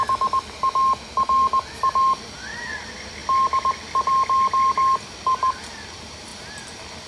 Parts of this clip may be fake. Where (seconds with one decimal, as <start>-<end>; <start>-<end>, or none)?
6.3-7.1